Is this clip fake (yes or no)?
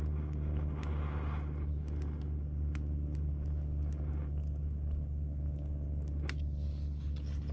no